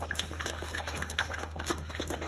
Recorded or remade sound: remade